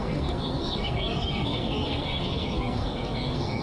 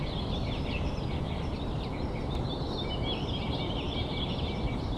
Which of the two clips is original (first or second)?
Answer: second